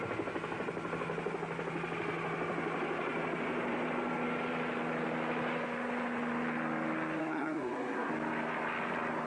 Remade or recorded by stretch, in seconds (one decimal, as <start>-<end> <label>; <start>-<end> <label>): 0.0-7.2 recorded; 7.2-8.1 remade; 8.1-9.3 recorded